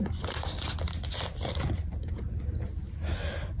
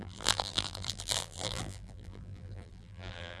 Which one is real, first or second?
first